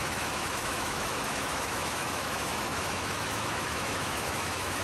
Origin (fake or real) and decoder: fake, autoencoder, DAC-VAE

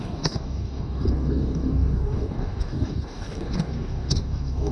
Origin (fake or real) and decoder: fake, codec, DAC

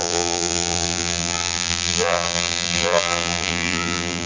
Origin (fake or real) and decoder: fake, vocoder, BigVGAN v2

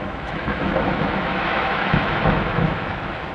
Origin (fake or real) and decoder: fake, autoencoder, DAC-VAE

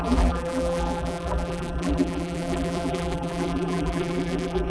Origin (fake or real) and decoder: fake, vocoder, BigVGAN v2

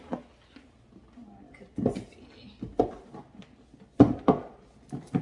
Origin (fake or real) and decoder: real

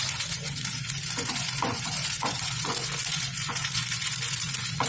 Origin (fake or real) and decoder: fake, vocoder, Vocos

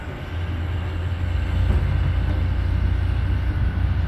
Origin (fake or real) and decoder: real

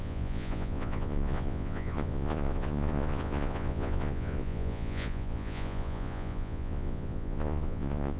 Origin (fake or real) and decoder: fake, vocoder, Vocos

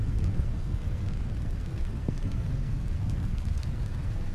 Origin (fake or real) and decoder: fake, codec, SNAC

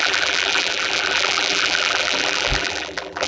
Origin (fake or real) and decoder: fake, vocoder, BigVGAN v2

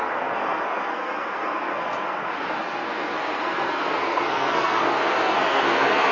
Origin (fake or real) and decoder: fake, codec, SNAC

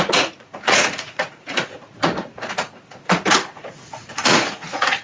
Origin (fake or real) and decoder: fake, vocoder, Vocos